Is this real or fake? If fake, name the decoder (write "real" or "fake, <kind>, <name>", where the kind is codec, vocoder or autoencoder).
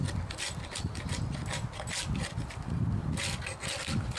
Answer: real